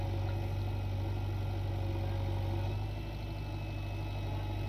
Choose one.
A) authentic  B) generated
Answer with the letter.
A